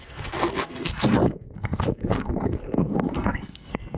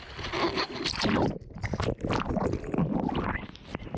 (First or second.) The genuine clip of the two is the second